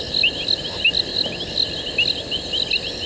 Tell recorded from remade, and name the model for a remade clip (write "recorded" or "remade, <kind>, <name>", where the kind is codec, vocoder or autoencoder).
recorded